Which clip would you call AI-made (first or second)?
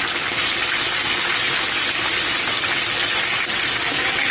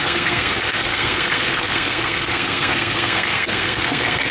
second